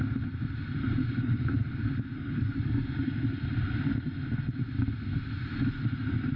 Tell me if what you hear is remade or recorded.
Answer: recorded